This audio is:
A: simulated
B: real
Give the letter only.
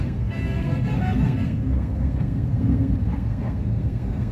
A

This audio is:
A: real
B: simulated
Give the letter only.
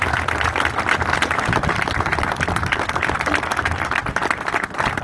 A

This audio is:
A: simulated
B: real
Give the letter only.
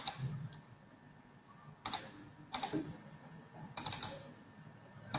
B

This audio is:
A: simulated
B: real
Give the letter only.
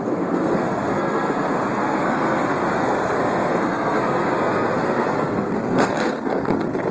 A